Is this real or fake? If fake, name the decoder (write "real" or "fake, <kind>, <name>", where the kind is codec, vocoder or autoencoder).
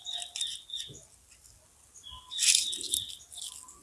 real